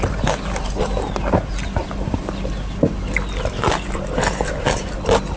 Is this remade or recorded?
recorded